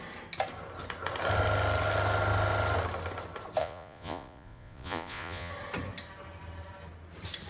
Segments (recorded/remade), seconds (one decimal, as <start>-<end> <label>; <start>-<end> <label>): 0.0-3.6 recorded; 3.6-5.5 remade; 5.5-7.5 recorded